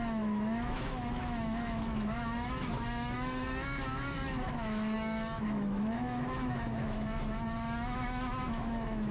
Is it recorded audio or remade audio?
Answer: remade